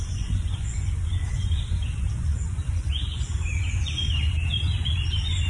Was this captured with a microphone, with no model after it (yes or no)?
no